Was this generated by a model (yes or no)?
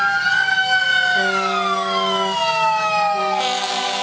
yes